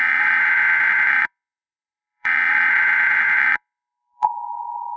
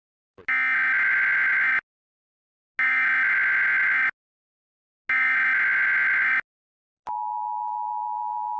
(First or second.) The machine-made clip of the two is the first